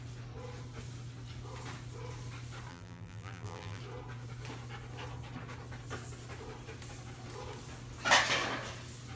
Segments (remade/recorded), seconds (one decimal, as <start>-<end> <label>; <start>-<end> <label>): 0.0-2.7 recorded; 2.7-3.8 remade; 3.8-9.2 recorded